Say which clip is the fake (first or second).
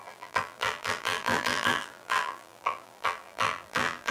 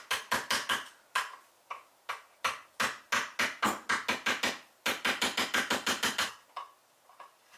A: first